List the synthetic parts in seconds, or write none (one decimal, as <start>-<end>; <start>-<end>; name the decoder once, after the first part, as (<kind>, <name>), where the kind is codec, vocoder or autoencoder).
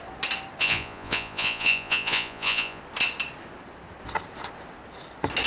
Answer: 0.6-2.8 (vocoder, Vocos)